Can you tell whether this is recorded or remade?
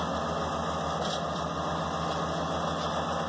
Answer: recorded